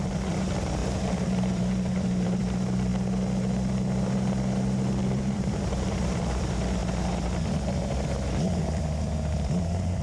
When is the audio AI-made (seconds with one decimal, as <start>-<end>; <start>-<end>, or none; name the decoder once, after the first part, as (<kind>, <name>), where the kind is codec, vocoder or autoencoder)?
0.8-2.4 (vocoder, BigVGAN v2); 5.0-6.2